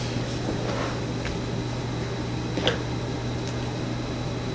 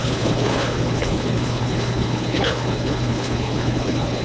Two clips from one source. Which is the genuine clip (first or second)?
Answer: first